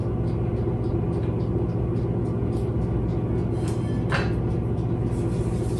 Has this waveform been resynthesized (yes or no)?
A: no